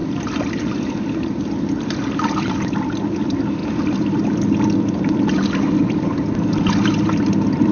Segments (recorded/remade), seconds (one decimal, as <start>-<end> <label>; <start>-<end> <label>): 0.0-1.1 recorded; 1.1-7.7 remade